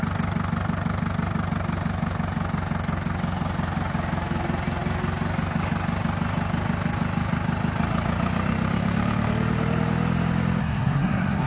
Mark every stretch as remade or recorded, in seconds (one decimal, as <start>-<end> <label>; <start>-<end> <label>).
0.0-10.6 recorded; 10.6-11.5 remade